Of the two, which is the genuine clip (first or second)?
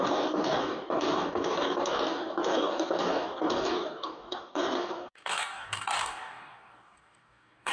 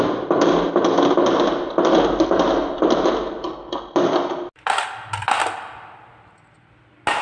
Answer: second